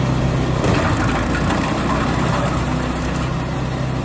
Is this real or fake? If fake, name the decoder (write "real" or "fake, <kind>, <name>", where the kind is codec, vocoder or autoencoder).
real